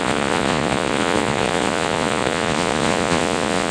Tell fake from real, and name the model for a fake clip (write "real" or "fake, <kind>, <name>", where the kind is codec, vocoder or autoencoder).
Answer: fake, vocoder, Vocos